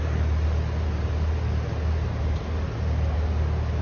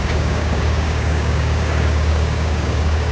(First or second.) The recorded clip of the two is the first